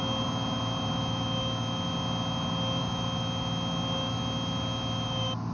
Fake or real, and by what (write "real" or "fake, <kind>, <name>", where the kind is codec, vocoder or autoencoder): real